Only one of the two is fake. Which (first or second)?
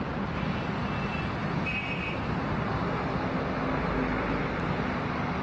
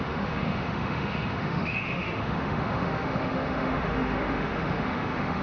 second